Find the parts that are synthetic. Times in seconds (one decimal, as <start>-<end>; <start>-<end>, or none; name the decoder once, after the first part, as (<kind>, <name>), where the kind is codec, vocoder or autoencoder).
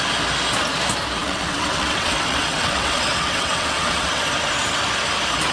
1.2-4.2 (vocoder, WaveNeXt)